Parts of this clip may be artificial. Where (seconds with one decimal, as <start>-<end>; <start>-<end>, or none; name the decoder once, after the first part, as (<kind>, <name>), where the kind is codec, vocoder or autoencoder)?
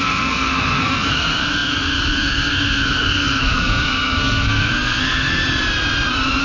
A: 0.0-5.4 (codec, SNAC)